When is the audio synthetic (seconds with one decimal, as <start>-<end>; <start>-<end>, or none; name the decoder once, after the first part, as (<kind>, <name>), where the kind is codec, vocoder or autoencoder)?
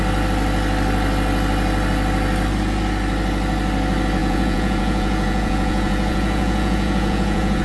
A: 4.2-7.6 (vocoder, Vocos)